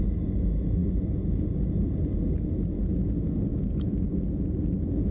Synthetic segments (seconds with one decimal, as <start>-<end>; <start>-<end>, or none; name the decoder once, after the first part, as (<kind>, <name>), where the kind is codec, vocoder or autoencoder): 3.5-4.1 (vocoder, Vocos)